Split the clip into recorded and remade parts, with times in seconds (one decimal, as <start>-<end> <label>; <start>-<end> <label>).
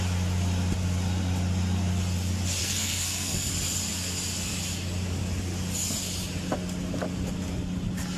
0.0-2.6 recorded; 2.6-3.5 remade; 3.5-8.2 recorded